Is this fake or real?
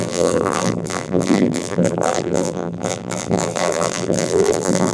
fake